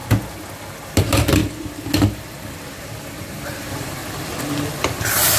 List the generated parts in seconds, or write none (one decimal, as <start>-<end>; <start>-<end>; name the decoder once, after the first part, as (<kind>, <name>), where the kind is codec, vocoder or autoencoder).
0.9-1.4 (vocoder, BigVGAN v2); 2.8-4.0